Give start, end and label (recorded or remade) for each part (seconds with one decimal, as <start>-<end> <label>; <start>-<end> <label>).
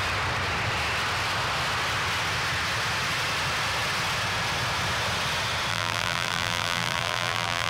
0.0-5.7 recorded; 5.7-7.7 remade